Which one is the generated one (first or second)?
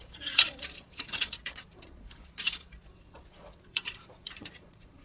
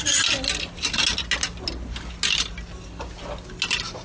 first